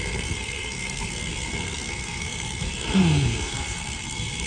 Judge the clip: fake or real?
fake